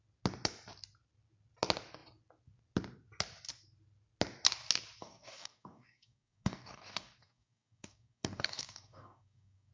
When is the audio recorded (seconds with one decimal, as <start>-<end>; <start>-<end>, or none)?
0.0-5.0